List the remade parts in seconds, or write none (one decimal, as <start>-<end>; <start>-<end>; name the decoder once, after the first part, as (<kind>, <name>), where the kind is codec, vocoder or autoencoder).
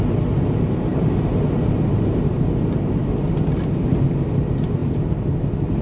0.9-2.4 (vocoder, BigVGAN v2)